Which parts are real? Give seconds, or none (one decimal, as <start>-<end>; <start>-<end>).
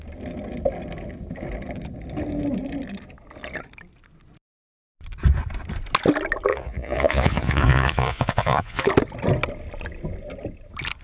0.0-6.5; 8.9-11.0